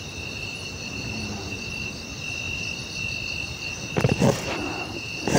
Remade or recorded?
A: recorded